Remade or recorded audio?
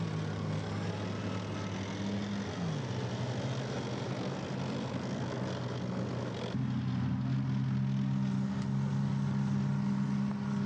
recorded